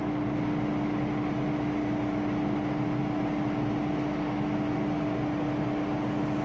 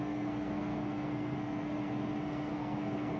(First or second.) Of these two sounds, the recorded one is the first